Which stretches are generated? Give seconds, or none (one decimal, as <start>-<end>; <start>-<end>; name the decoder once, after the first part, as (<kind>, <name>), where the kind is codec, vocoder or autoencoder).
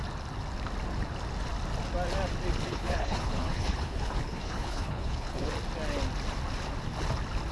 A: 2.7-5.5 (codec, HILCodec)